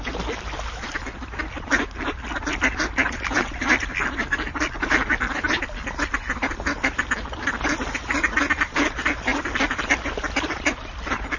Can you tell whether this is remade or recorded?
recorded